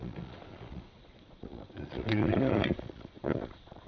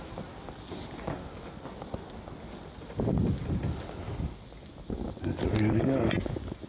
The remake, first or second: first